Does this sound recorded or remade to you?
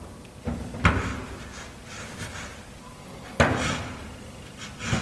recorded